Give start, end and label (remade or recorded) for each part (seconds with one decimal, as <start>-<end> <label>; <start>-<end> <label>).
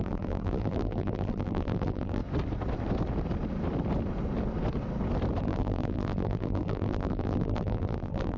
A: 0.0-2.2 remade; 2.2-5.4 recorded; 5.4-8.4 remade